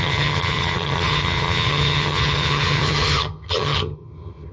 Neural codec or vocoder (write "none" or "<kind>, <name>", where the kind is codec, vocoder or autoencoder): vocoder, HiFi-GAN